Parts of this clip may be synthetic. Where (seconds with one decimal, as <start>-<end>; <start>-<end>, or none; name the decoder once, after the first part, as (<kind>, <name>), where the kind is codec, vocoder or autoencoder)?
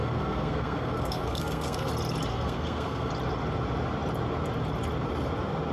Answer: 0.0-1.9 (codec, SNAC); 2.3-3.1